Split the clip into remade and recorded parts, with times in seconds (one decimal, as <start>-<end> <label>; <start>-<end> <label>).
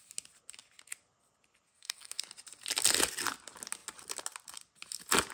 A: 0.0-1.7 recorded; 1.7-2.2 remade; 2.2-5.3 recorded